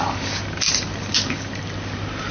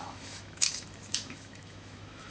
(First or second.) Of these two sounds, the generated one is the second